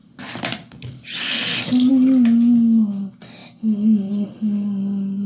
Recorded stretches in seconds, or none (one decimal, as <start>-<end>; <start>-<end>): 0.0-5.3